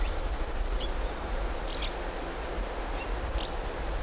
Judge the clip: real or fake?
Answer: real